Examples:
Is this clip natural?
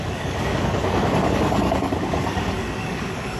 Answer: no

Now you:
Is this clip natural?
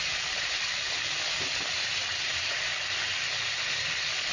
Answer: yes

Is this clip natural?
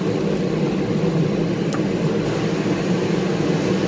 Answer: yes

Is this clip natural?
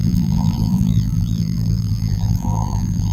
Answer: no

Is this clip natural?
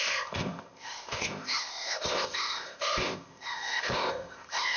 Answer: no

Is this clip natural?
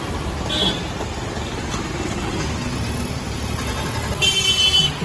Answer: yes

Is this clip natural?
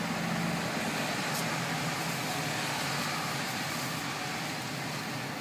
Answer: yes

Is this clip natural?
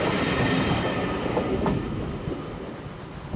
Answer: yes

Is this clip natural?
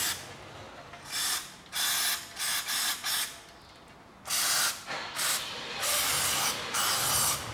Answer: yes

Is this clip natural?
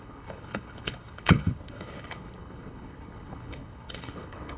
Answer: no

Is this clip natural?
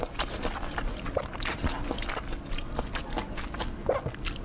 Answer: yes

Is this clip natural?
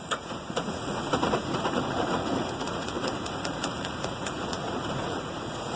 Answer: no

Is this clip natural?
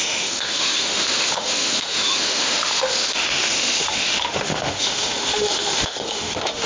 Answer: no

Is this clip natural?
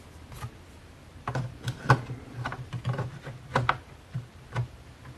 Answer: yes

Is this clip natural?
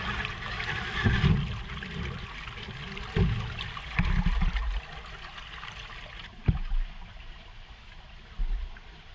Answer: yes